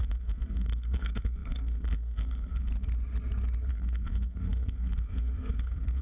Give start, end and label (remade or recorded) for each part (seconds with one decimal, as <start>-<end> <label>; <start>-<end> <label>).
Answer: 0.0-2.7 remade; 2.7-3.7 recorded; 3.7-6.0 remade